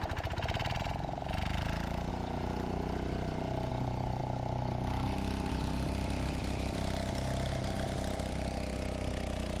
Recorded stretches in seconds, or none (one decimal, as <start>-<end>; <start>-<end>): 0.0-9.6